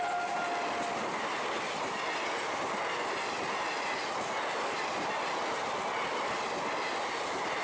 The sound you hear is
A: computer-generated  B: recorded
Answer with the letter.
B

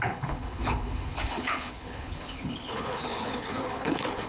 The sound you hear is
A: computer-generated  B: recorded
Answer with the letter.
A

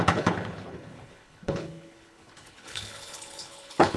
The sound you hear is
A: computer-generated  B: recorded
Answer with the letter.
A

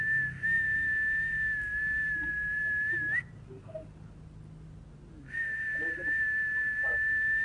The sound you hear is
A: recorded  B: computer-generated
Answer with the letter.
A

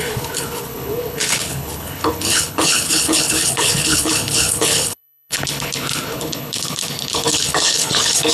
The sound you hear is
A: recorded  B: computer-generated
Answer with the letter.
B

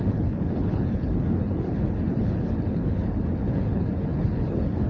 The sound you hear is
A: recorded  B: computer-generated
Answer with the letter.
B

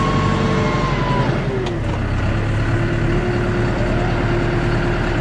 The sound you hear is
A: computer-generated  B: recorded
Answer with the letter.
B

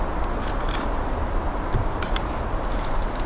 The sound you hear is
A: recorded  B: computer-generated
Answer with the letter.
A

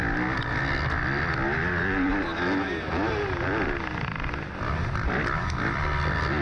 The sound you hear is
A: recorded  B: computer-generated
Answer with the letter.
A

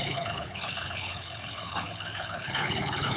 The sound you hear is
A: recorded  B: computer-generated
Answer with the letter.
B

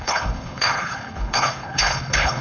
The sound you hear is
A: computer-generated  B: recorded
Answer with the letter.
A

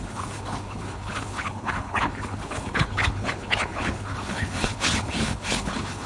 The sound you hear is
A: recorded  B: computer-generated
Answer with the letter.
B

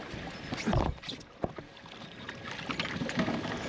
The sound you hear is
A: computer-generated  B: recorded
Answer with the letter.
B